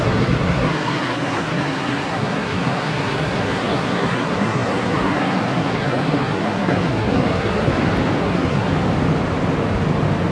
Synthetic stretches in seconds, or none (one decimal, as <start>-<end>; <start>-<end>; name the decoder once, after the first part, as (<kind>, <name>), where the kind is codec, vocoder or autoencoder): 0.0-7.7 (codec, SNAC); 8.2-8.7